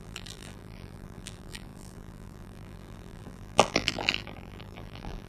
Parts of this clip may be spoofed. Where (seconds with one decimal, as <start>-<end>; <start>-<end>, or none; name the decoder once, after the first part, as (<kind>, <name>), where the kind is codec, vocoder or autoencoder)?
0.0-5.3 (vocoder, BigVGAN v2)